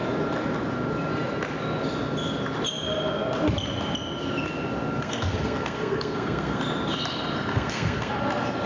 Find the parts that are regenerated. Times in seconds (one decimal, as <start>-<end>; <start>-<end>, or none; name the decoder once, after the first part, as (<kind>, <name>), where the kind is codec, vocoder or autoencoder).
5.0-6.6 (codec, SNAC); 7.5-8.1